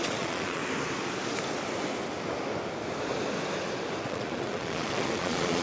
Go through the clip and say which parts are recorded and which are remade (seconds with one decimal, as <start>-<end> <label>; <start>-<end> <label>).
0.0-0.6 remade; 0.6-4.0 recorded; 4.0-5.6 remade